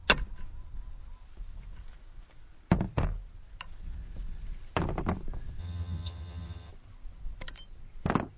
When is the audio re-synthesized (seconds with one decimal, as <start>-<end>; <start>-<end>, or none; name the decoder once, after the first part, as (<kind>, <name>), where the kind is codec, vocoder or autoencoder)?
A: 5.6-6.7 (vocoder, HiFi-GAN)